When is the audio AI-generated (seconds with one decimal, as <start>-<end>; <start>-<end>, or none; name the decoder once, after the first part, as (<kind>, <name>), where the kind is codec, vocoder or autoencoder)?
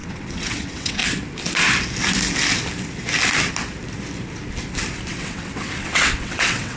0.0-1.0 (vocoder, WaveNeXt); 5.1-6.8